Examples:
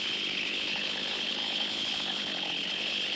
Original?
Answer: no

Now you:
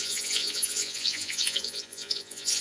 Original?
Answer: no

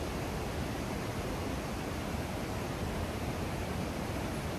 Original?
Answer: yes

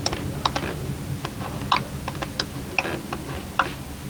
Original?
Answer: yes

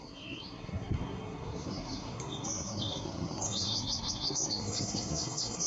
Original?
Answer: no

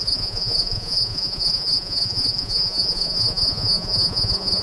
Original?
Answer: no